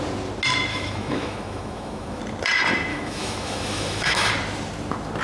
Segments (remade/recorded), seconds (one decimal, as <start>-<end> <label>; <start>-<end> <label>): 0.0-0.7 recorded; 0.7-2.2 remade; 2.2-2.9 recorded; 2.9-4.3 remade; 4.3-5.2 recorded